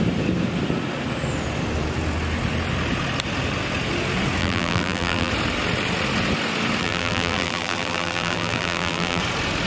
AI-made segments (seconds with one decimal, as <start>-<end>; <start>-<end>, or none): 4.4-5.3; 6.8-9.2